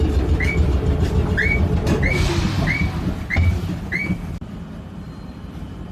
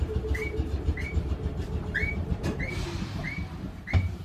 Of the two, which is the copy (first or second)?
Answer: second